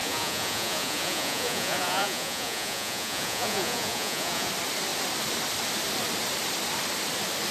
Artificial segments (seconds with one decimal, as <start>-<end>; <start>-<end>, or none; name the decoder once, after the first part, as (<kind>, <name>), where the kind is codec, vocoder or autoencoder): 0.0-4.5 (vocoder, Vocos)